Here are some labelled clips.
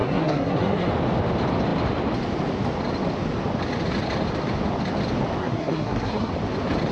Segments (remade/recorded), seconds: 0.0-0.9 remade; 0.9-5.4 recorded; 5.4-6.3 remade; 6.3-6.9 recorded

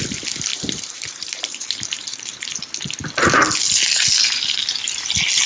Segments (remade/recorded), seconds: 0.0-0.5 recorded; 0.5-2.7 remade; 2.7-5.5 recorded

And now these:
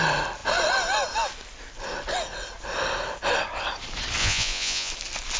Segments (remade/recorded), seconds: 0.0-4.2 recorded; 4.2-4.9 remade; 4.9-5.4 recorded

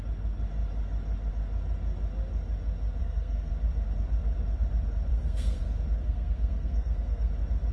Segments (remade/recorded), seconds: 0.0-3.0 recorded; 3.0-3.5 remade; 3.5-5.1 recorded; 5.1-5.6 remade; 5.6-6.0 recorded; 6.0-7.3 remade; 7.3-7.7 recorded

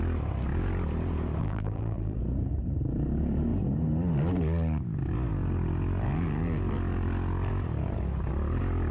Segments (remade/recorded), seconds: 0.0-1.4 recorded; 1.4-2.2 remade; 2.2-8.9 recorded

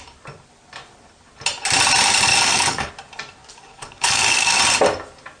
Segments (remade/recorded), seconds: 0.0-2.3 recorded; 2.3-2.9 remade; 2.9-3.4 recorded; 3.4-4.6 remade; 4.6-5.4 recorded